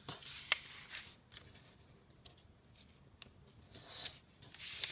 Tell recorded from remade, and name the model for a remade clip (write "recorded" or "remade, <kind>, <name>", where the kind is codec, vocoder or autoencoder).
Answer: recorded